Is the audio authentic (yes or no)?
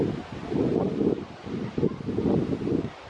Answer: yes